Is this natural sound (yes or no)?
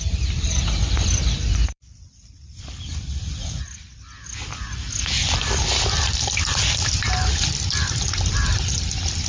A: no